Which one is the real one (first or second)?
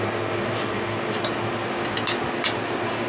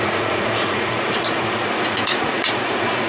first